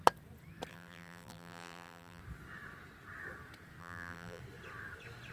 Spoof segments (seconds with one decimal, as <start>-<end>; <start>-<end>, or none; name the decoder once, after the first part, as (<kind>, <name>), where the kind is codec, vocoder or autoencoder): 0.7-2.2 (vocoder, BigVGAN v2); 3.8-4.4